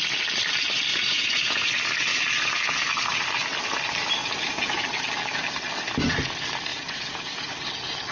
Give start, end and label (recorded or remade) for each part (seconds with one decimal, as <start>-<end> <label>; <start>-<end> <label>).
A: 0.0-0.9 recorded; 0.9-1.7 remade; 1.7-4.2 recorded; 4.2-4.8 remade; 4.8-6.7 recorded; 6.7-7.5 remade; 7.5-8.1 recorded